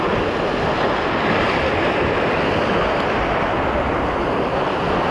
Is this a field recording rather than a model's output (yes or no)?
yes